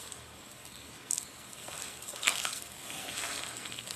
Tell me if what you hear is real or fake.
fake